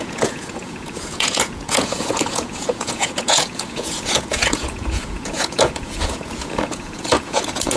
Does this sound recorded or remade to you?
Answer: remade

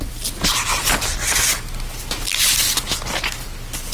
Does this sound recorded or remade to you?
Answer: recorded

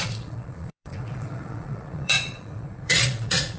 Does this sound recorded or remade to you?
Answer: remade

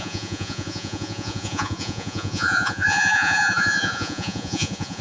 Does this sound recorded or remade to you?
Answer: remade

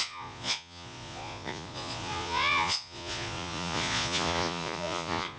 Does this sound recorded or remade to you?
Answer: remade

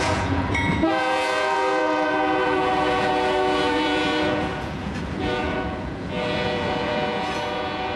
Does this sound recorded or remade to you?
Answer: remade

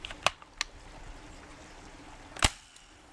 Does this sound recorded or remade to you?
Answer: recorded